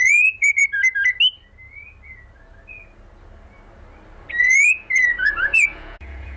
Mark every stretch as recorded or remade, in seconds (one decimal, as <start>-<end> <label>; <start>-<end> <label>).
0.0-0.6 remade; 0.6-4.4 recorded; 4.4-6.4 remade